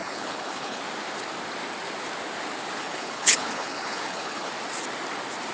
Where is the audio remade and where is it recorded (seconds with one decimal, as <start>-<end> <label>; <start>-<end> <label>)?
0.0-0.8 remade; 0.8-2.8 recorded; 2.8-4.5 remade; 4.5-5.5 recorded